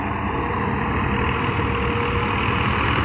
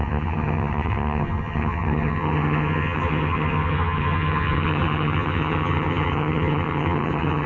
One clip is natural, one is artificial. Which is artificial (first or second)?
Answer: second